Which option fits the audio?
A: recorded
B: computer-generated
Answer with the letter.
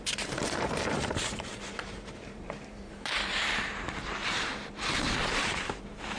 B